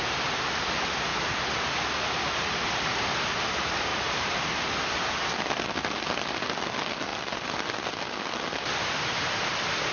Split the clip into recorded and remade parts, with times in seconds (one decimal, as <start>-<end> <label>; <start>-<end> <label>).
0.0-3.9 recorded; 3.9-4.4 remade; 4.4-9.9 recorded